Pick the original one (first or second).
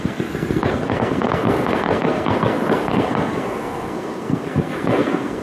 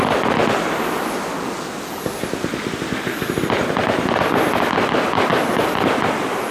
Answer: second